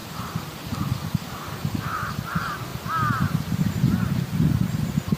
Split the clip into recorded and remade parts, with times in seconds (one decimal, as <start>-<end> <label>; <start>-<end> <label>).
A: 0.0-5.2 recorded